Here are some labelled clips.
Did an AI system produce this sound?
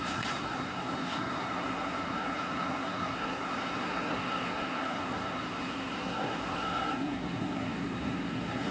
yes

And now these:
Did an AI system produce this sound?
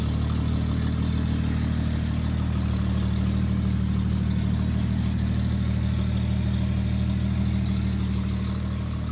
no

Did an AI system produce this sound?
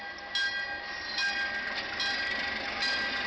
no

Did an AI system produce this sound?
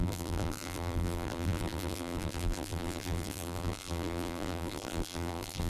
yes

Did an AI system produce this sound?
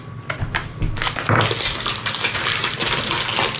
no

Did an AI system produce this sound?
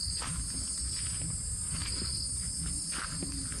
no